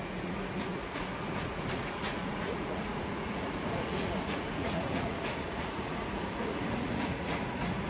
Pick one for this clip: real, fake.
fake